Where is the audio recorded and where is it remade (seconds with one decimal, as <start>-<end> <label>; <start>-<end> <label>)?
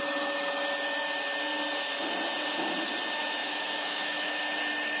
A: 0.0-3.4 recorded; 3.4-4.4 remade; 4.4-5.0 recorded